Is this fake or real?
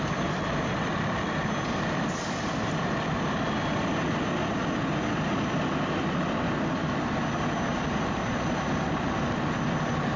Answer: real